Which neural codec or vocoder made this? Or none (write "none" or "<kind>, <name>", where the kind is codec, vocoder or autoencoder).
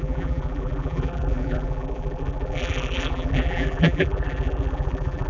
vocoder, BigVGAN v2